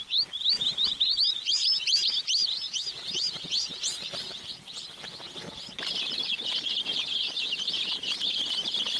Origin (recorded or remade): remade